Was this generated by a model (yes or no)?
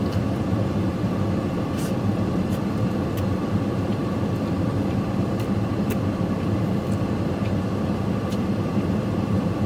yes